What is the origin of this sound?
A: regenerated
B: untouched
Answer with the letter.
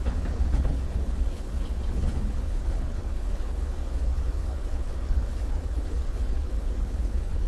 A